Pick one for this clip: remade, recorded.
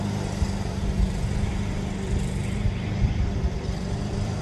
remade